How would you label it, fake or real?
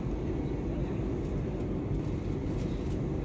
real